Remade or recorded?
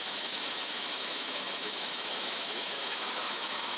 remade